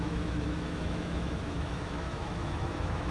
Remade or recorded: remade